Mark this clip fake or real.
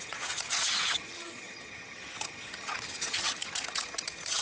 fake